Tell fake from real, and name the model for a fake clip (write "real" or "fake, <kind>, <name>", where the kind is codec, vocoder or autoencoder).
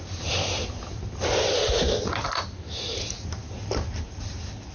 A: real